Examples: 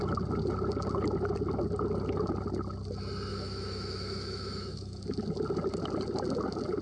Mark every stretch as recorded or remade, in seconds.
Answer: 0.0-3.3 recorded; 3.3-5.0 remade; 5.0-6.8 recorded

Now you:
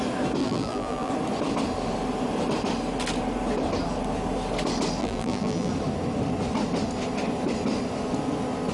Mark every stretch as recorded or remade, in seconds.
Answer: 0.0-0.4 recorded; 0.4-1.1 remade; 1.1-5.0 recorded; 5.0-5.7 remade; 5.7-8.7 recorded

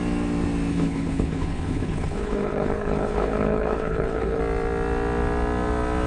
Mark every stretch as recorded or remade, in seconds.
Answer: 0.0-0.7 recorded; 0.7-4.4 remade; 4.4-6.1 recorded

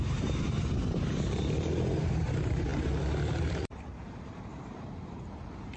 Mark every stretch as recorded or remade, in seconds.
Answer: 0.0-2.7 remade; 2.7-3.4 recorded; 3.4-5.8 remade